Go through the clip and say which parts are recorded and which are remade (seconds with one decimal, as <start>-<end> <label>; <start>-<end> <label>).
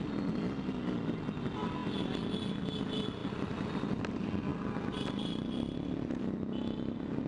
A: 0.0-3.2 recorded; 3.2-3.9 remade; 3.9-4.5 recorded; 4.5-6.2 remade; 6.2-7.3 recorded